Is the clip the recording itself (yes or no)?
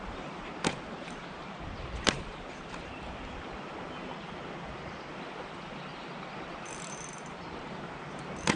no